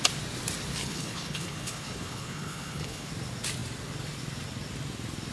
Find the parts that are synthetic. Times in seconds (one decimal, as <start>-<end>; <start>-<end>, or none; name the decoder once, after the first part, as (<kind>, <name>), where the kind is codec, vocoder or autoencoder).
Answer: 0.8-3.1 (codec, HILCodec)